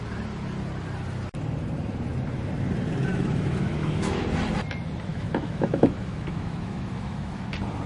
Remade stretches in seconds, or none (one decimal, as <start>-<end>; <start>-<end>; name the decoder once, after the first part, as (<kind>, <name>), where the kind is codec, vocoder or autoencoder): 3.1-4.2 (autoencoder, DAC-VAE); 5.1-7.5